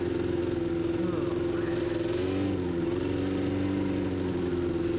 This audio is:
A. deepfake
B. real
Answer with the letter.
B